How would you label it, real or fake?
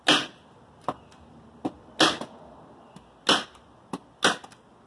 real